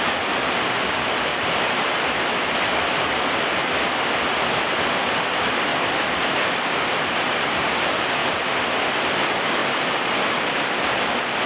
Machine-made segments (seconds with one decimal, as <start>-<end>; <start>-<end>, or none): 1.3-2.2; 9.6-11.1